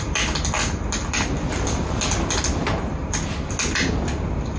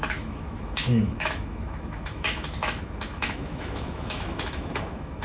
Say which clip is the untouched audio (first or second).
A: first